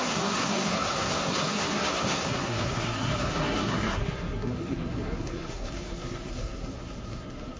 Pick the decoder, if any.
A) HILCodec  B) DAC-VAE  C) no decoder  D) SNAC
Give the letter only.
D